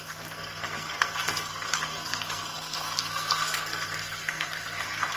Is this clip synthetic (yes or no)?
yes